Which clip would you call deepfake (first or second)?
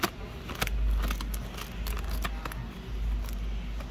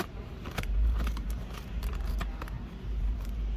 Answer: second